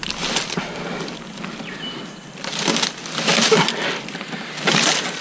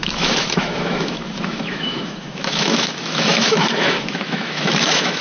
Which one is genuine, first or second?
first